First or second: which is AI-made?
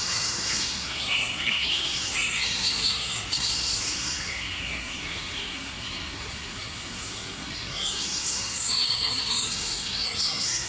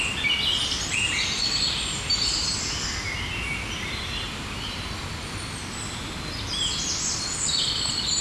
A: first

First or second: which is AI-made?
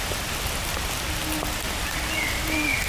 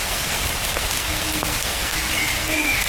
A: second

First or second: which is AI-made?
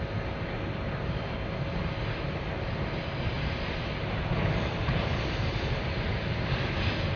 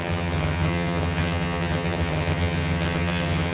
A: second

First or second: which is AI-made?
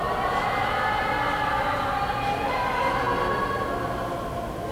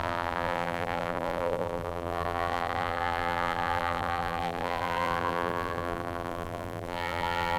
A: second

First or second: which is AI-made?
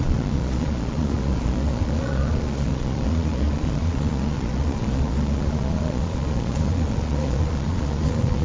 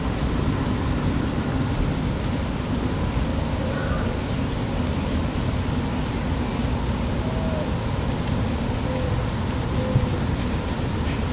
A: first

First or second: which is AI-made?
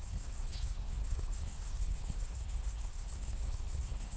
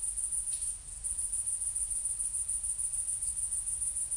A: first